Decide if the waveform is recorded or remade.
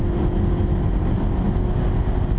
recorded